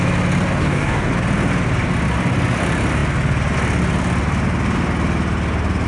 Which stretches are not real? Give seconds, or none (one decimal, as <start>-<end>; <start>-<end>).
0.6-1.1

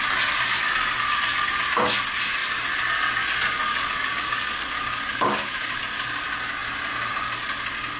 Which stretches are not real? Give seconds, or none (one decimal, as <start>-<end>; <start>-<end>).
3.7-5.8

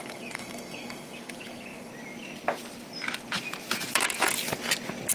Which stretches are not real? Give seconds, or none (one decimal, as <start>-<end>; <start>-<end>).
0.0-1.9

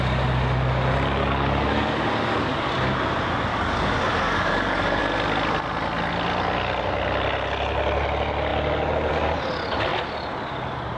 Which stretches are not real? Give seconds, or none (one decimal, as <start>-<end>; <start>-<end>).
1.2-2.7; 3.5-5.0

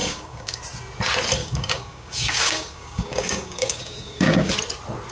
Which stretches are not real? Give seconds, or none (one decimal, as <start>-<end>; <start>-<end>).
0.0-0.6; 1.4-4.5

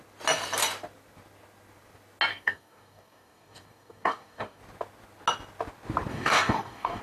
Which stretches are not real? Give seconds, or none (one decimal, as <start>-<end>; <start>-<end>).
2.3-4.6; 6.1-7.0

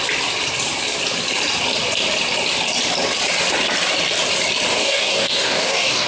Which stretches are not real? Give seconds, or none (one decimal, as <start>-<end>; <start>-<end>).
4.7-6.1

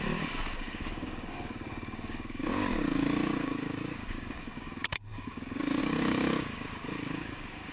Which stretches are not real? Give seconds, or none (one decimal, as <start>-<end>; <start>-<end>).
0.0-7.7